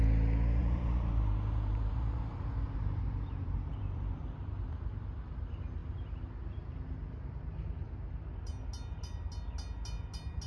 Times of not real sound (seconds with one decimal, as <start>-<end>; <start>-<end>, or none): 0.6-4.2